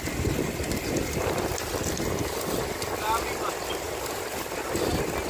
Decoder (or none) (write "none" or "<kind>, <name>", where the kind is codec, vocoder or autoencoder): none